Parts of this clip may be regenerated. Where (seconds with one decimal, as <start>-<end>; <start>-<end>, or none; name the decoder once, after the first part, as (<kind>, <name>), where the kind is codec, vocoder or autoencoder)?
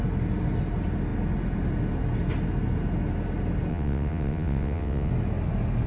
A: 3.7-5.1 (vocoder, WaveNeXt)